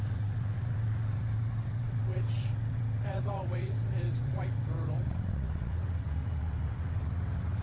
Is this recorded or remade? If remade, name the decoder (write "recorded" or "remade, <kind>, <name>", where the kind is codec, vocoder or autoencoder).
remade, vocoder, WaveNeXt